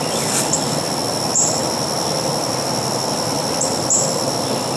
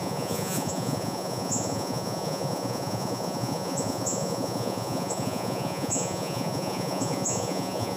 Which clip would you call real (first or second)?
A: first